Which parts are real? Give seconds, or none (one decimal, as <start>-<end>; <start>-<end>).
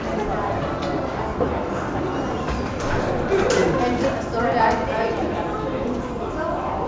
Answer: 0.0-6.9